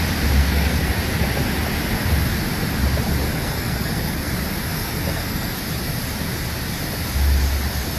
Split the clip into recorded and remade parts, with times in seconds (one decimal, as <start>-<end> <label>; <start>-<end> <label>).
0.0-0.4 recorded; 0.4-0.9 remade; 0.9-3.3 recorded; 3.3-4.3 remade; 4.3-4.7 recorded; 4.7-5.6 remade; 5.6-8.0 recorded